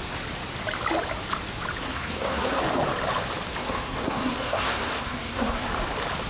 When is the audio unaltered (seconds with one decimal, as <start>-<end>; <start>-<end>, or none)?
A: 0.0-1.8; 2.6-3.6; 5.7-6.3